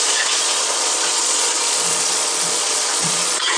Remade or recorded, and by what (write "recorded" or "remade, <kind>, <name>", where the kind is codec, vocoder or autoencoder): remade, vocoder, Vocos